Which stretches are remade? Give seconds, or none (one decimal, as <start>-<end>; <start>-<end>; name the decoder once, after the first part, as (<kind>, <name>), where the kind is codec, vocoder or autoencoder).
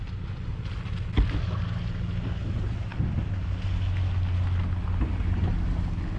none